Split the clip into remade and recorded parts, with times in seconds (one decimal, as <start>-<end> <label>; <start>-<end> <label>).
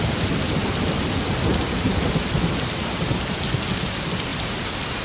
0.0-5.0 recorded